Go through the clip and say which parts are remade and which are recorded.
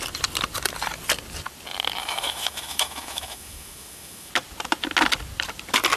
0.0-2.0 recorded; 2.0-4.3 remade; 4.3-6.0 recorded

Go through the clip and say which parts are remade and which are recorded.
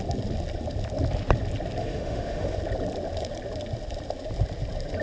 0.0-1.8 recorded; 1.8-2.6 remade; 2.6-5.0 recorded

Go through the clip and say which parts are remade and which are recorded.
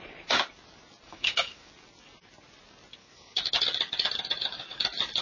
0.0-1.1 recorded; 1.1-1.7 remade; 1.7-3.0 recorded; 3.0-3.5 remade; 3.5-5.2 recorded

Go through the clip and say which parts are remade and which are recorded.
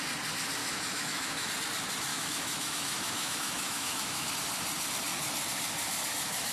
0.0-0.6 recorded; 0.6-1.5 remade; 1.5-2.1 recorded; 2.1-4.3 remade; 4.3-6.5 recorded